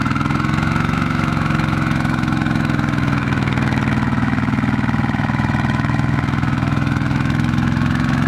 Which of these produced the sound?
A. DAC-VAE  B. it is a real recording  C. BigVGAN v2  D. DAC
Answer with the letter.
A